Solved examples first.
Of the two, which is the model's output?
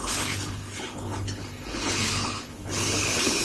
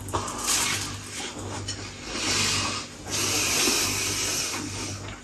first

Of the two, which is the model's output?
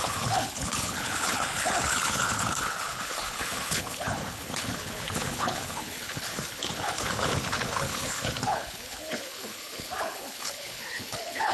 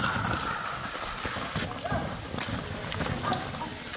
first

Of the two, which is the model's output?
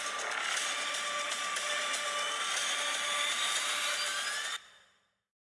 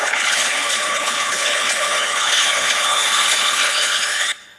second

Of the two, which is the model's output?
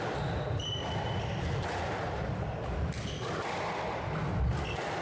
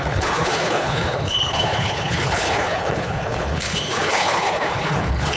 second